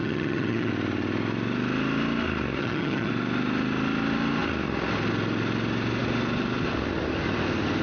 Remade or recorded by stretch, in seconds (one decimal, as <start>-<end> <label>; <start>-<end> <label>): 0.0-0.7 remade; 0.7-2.6 recorded; 2.6-3.1 remade; 3.1-7.8 recorded